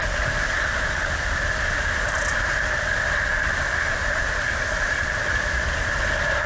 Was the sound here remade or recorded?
recorded